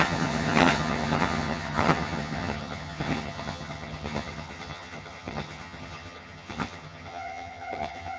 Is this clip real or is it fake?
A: fake